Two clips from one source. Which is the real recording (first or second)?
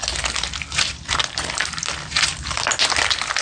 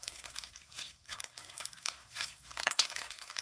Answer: first